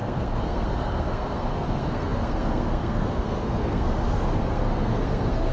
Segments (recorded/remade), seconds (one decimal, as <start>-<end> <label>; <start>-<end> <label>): 0.0-5.5 remade